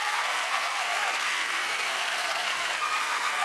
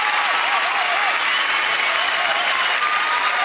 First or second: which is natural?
second